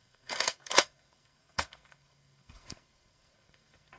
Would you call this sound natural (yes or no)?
no